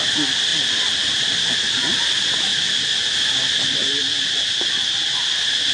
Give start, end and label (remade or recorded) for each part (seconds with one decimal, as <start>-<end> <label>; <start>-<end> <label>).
0.0-5.7 recorded